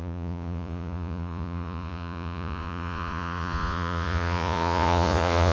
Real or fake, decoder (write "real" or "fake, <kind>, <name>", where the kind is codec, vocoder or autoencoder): fake, vocoder, Vocos